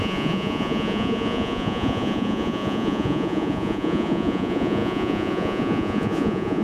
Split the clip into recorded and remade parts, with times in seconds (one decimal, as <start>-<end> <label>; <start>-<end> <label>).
0.0-6.6 remade